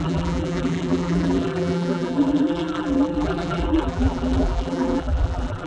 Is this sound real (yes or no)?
no